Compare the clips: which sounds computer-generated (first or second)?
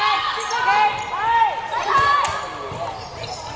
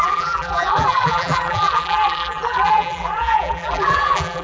second